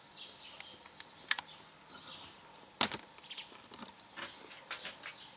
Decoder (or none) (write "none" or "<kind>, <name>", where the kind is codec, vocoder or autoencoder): none